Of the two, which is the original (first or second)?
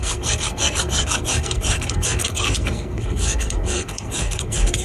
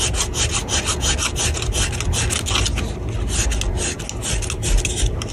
second